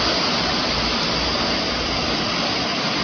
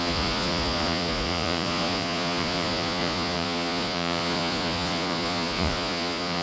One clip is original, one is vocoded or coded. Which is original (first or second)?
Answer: first